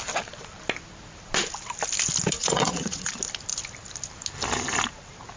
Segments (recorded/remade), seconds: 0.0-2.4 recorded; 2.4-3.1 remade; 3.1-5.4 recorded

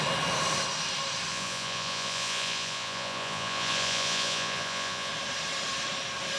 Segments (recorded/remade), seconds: 0.0-1.3 recorded; 1.3-5.1 remade; 5.1-6.4 recorded

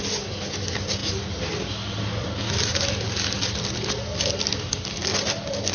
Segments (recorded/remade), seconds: 0.0-5.7 recorded

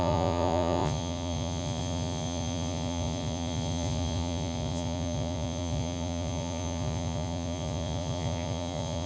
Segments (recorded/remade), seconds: 0.0-9.1 remade

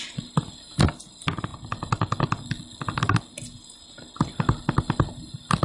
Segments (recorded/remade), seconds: 0.0-5.6 recorded